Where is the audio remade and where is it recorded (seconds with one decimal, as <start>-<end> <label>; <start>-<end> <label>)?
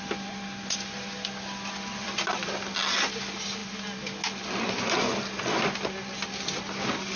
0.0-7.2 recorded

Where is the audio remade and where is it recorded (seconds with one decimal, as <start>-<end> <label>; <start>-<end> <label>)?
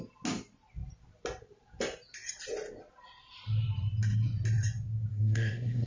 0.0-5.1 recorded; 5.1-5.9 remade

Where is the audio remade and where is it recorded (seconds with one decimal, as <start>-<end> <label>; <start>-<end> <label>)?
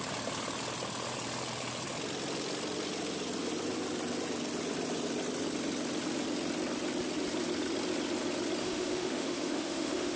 0.0-8.6 recorded; 8.6-10.2 remade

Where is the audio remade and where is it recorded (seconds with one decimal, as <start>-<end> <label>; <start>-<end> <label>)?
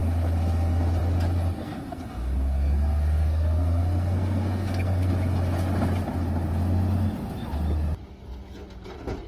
0.0-1.6 recorded; 1.6-5.1 remade; 5.1-9.3 recorded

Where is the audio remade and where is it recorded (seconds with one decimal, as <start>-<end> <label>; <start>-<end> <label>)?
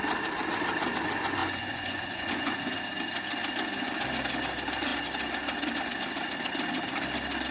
0.0-1.4 recorded; 1.4-2.7 remade; 2.7-7.5 recorded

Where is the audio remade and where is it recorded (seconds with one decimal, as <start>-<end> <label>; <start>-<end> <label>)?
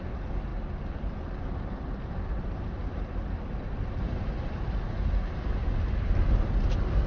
0.0-7.1 recorded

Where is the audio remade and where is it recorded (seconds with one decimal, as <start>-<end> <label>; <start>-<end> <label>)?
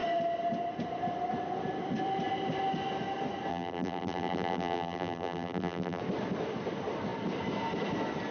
0.0-3.5 recorded; 3.5-6.0 remade; 6.0-8.3 recorded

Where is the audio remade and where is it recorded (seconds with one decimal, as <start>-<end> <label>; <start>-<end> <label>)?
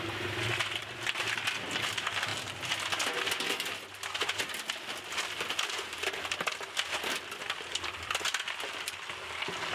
0.0-9.7 recorded